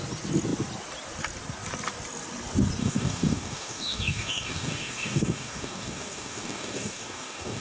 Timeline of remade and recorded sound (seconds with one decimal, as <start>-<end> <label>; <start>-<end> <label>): 0.0-2.8 recorded; 2.8-7.6 remade